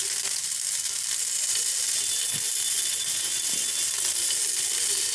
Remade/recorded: recorded